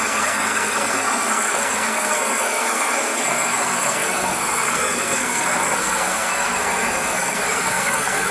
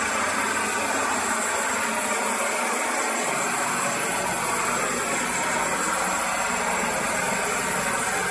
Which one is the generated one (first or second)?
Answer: first